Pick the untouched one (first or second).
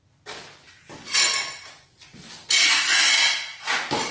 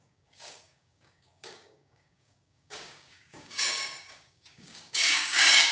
first